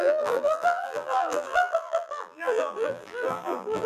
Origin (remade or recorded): remade